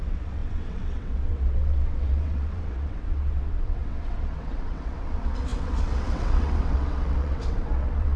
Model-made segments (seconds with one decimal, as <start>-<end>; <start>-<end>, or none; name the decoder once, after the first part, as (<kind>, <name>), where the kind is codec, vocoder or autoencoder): 0.0-8.2 (vocoder, WaveNeXt)